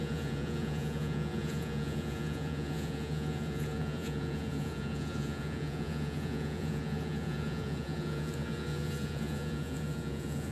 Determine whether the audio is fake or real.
fake